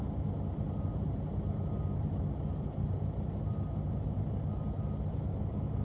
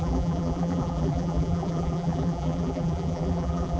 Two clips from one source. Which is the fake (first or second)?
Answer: second